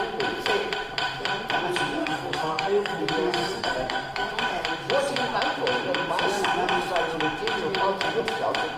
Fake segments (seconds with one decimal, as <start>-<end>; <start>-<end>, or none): 2.0-3.0; 3.4-4.3

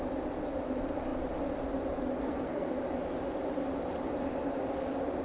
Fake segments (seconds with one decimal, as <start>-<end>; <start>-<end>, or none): 2.2-2.7

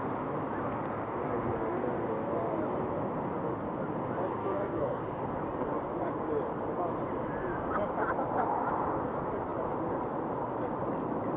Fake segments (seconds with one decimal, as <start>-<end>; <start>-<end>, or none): 4.4-5.0